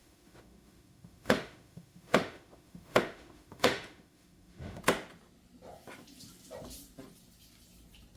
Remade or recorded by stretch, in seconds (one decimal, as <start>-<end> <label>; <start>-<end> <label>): 0.0-4.8 remade; 4.8-8.2 recorded